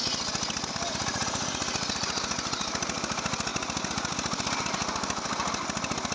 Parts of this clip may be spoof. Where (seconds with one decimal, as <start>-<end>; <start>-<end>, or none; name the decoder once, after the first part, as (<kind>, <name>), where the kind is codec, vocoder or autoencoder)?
none